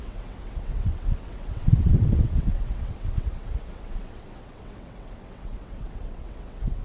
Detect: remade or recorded remade